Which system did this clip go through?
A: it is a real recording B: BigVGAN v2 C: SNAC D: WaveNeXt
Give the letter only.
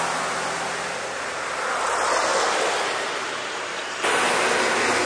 A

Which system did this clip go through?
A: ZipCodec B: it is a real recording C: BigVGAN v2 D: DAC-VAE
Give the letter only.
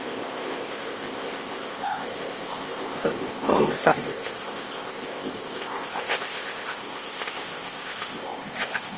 A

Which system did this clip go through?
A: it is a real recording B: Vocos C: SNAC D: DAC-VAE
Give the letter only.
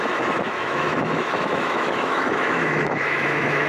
D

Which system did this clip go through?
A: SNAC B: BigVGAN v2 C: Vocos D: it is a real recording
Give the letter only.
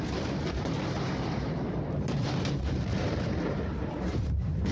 B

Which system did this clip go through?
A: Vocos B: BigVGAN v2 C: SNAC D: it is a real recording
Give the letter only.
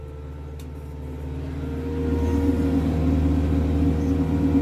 D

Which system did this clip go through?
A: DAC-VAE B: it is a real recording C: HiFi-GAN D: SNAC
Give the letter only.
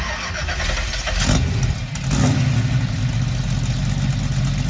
B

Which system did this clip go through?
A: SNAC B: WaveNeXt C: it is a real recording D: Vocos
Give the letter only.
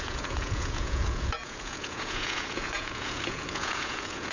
D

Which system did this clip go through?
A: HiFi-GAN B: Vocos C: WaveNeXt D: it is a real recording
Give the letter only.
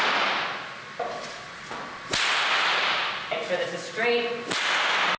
D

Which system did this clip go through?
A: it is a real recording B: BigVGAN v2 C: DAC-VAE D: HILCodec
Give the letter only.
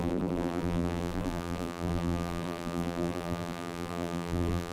B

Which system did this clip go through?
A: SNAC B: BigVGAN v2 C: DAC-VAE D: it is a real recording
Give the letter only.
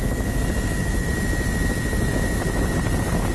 D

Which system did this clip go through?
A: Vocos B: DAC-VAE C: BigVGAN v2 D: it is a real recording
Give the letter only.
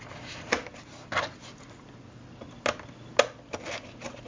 D